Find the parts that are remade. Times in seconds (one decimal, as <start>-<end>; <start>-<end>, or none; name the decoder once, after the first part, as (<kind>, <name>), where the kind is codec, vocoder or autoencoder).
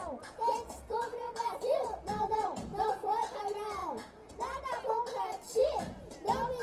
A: 0.0-3.4 (vocoder, Vocos); 3.8-4.3; 5.6-6.6